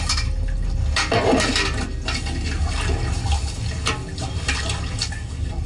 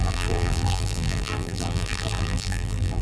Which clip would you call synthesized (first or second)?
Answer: second